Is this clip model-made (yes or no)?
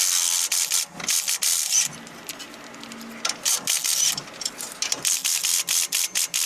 no